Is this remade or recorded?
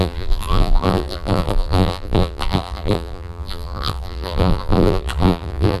remade